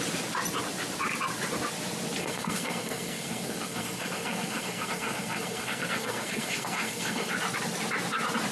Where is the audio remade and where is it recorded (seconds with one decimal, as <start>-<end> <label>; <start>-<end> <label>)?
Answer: 0.0-2.2 recorded; 2.2-7.3 remade; 7.3-8.5 recorded